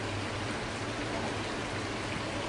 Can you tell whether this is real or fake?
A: real